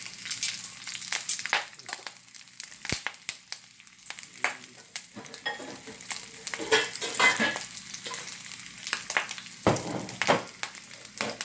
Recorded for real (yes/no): yes